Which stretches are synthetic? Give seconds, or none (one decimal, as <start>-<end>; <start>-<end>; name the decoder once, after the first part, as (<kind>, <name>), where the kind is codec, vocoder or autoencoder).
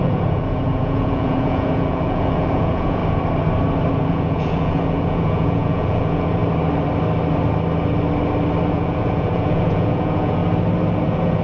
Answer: 0.0-3.0 (vocoder, Vocos); 3.9-6.4; 8.7-10.4; 10.9-11.4